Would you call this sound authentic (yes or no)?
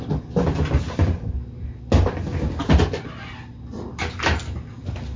yes